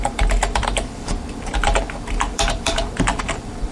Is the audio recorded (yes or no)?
no